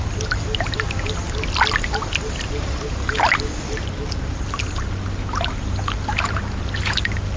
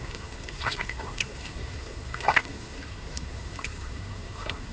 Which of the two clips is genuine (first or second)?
first